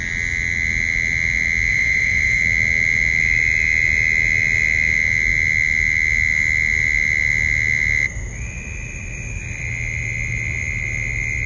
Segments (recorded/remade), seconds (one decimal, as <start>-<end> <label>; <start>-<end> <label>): 0.0-1.7 recorded; 1.7-2.4 remade; 2.4-11.5 recorded